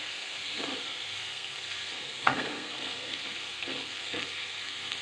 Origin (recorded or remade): remade